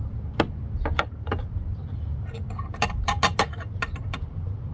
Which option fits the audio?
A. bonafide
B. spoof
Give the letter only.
A